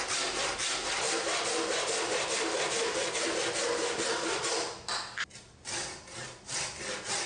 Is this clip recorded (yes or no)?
yes